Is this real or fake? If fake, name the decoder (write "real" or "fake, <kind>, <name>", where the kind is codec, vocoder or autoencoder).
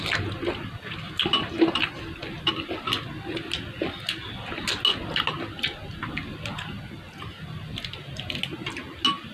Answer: real